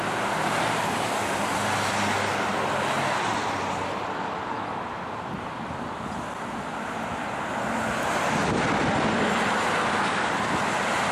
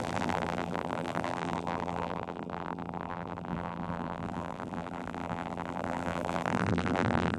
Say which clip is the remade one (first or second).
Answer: second